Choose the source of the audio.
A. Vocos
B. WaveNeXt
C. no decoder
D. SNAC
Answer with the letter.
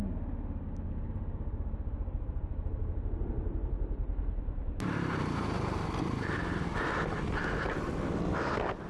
C